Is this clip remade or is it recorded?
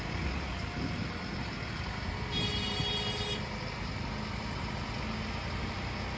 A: recorded